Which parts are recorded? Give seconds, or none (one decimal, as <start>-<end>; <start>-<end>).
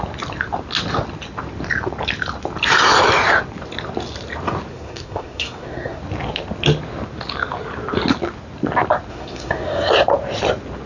0.0-4.7; 6.0-9.1; 9.9-10.9